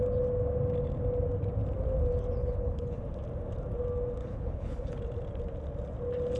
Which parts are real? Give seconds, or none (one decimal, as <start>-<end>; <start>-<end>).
0.0-2.4; 3.0-4.2; 5.0-6.4

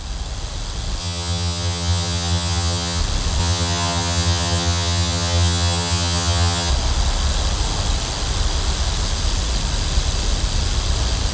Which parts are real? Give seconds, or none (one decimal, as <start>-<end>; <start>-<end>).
0.0-1.0; 3.0-3.4; 6.7-11.3